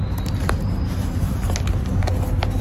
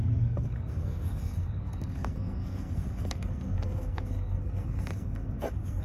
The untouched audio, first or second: first